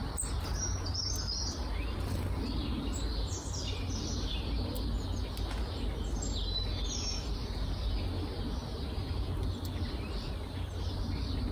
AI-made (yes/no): no